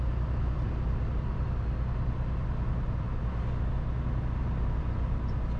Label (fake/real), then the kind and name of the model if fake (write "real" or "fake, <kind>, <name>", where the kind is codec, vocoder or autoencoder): real